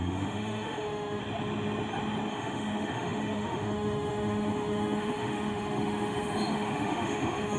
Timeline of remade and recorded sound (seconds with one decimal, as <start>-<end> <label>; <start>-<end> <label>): 0.0-1.2 remade; 1.2-2.3 recorded; 2.3-7.6 remade